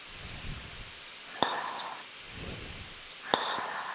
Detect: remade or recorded recorded